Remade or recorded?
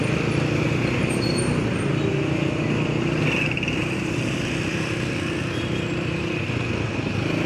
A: recorded